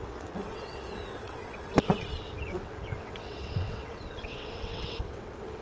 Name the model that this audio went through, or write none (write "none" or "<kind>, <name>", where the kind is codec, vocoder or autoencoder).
vocoder, WaveNeXt